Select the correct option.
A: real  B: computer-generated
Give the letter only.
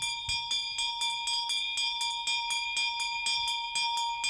A